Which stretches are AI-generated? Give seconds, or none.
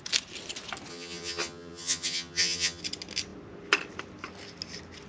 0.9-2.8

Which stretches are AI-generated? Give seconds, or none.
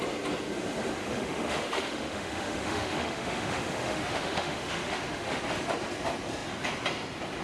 1.0-5.4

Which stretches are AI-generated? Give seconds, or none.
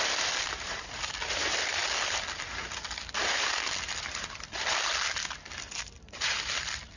none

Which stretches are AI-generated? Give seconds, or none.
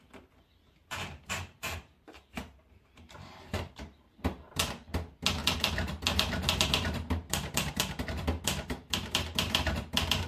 0.8-4.6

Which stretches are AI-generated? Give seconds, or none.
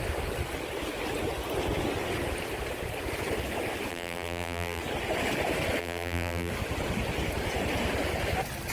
3.9-4.8; 5.8-6.5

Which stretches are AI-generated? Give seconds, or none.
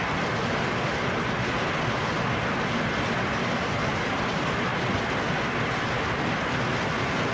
none